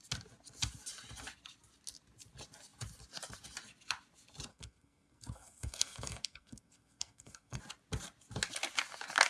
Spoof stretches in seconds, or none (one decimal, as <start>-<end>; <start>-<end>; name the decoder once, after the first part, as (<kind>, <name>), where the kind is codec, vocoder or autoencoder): 4.5-7.6 (codec, SNAC)